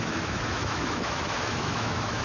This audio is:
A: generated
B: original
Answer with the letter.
A